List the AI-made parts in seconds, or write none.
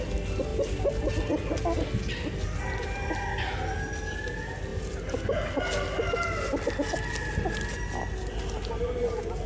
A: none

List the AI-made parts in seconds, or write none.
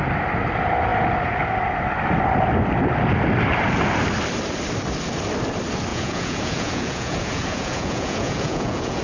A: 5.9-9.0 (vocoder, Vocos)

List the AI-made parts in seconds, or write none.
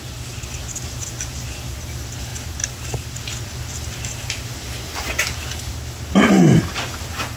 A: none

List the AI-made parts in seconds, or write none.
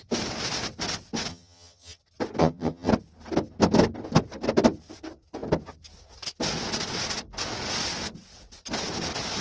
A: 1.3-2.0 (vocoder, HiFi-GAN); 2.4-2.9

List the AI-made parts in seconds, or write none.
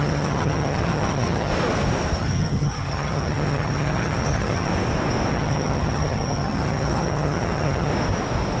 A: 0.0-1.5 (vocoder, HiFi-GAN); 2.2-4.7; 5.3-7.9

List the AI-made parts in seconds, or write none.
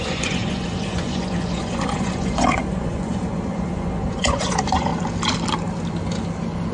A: 0.0-4.9 (vocoder, Vocos)